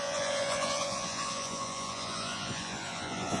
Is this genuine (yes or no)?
no